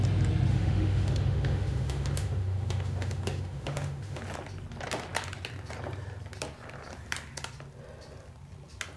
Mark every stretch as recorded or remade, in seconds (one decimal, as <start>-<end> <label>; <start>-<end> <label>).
0.0-0.5 recorded; 0.5-4.2 remade; 4.2-9.0 recorded